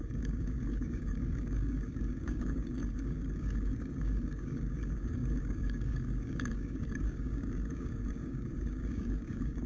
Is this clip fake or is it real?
fake